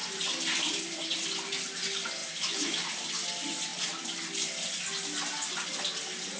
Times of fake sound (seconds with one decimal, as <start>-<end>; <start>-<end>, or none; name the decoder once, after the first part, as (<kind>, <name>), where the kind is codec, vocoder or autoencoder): 0.0-1.2 (vocoder, BigVGAN v2); 2.2-2.9